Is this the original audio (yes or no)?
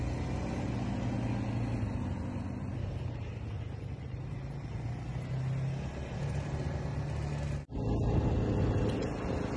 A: yes